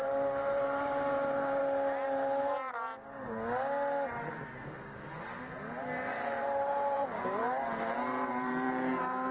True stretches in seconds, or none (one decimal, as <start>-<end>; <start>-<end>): 1.6-4.1; 5.3-6.1